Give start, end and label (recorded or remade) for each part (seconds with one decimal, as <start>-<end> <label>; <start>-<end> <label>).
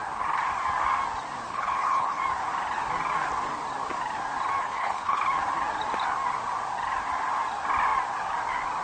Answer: 0.0-1.5 recorded; 1.5-2.2 remade; 2.2-4.6 recorded; 4.6-5.2 remade; 5.2-8.8 recorded